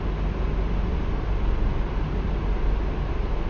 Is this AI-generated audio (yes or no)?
no